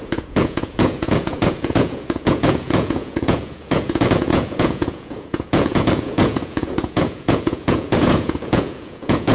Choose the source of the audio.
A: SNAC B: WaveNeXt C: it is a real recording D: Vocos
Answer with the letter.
D